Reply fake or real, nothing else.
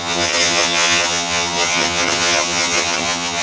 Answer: fake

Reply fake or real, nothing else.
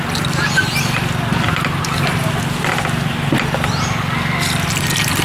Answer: real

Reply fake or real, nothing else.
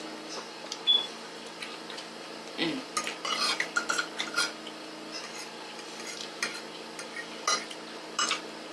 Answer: real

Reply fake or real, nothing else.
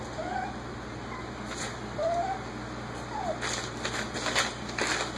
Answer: real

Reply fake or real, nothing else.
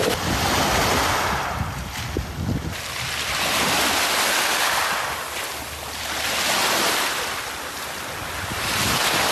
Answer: real